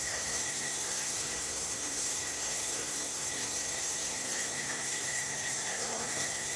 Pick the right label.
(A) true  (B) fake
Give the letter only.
B